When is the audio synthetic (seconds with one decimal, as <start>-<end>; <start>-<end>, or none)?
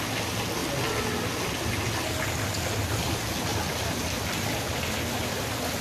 none